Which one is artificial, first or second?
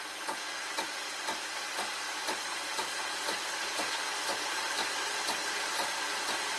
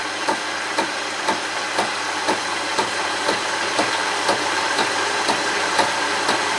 second